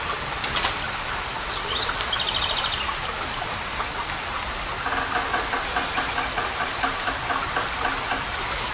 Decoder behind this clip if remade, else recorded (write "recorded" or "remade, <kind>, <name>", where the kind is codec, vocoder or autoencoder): recorded